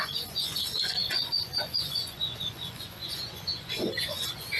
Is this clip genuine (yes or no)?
no